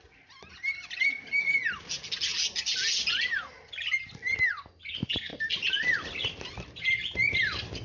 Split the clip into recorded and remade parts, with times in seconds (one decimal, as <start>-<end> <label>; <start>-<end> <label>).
0.0-7.8 recorded